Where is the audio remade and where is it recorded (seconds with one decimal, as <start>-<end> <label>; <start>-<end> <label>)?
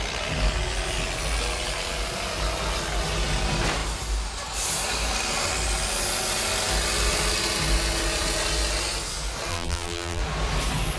0.0-9.5 recorded; 9.5-10.2 remade; 10.2-11.0 recorded